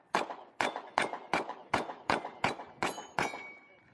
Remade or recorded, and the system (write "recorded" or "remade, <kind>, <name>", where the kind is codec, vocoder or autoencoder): remade, vocoder, Vocos